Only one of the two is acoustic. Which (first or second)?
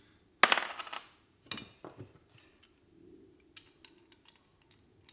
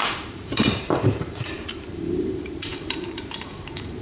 first